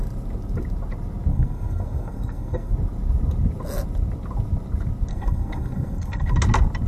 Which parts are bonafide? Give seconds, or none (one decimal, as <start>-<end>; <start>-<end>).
0.0-1.3; 2.7-5.1; 6.4-6.9

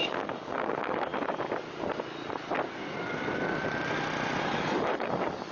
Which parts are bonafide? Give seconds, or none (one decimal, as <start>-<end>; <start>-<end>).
1.1-4.4

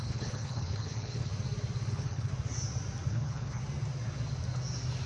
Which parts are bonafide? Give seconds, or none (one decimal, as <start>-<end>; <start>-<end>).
1.3-1.9; 2.3-3.1; 3.6-5.1

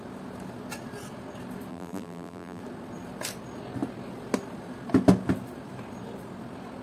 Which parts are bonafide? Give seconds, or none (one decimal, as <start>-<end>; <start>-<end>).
0.0-1.7; 2.6-6.8

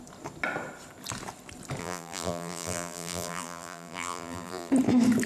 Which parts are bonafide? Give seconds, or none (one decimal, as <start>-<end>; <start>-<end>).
0.0-1.8; 4.7-5.3

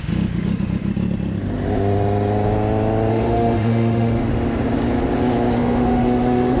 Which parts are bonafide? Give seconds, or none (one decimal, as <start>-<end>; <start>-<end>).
0.9-3.1; 4.2-5.5

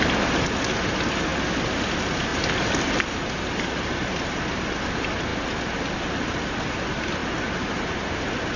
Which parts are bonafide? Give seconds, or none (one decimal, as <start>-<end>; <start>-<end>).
0.0-2.3; 4.6-8.6

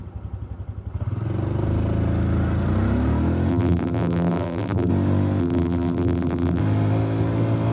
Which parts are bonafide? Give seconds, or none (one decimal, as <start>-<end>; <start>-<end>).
0.0-3.5; 4.9-5.4; 6.6-7.7